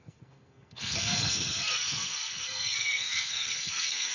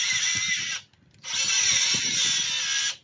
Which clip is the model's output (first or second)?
first